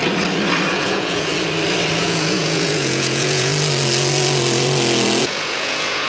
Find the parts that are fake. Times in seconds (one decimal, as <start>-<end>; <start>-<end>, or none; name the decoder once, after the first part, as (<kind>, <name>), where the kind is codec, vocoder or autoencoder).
0.7-1.3 (vocoder, Vocos); 2.0-3.5; 5.2-6.1